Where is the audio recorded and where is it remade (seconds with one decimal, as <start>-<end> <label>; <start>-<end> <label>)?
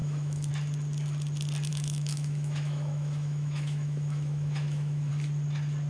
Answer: 0.0-0.5 remade; 0.5-1.7 recorded; 1.7-5.1 remade; 5.1-5.9 recorded